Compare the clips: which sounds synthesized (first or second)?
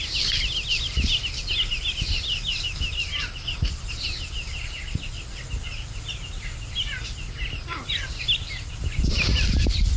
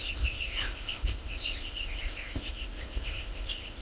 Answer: second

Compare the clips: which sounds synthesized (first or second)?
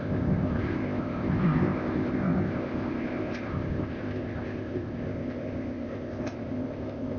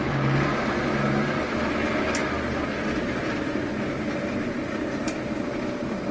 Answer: first